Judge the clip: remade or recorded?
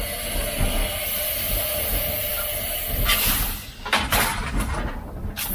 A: recorded